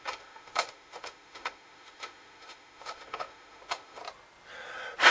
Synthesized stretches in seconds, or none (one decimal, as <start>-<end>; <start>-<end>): 0.0-4.0